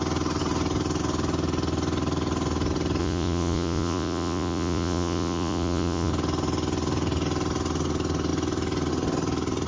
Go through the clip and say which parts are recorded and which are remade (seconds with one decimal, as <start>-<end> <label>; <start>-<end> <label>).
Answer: 0.0-3.0 recorded; 3.0-6.1 remade; 6.1-9.7 recorded